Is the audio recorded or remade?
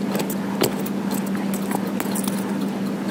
recorded